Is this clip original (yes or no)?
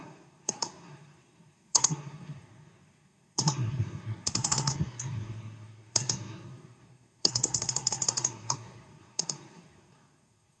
no